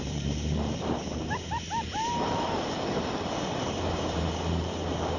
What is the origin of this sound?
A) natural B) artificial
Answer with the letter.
B